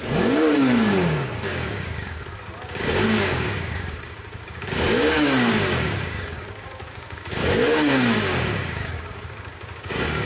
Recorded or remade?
remade